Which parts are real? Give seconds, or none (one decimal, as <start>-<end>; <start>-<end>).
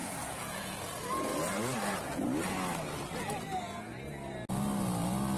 0.7-5.4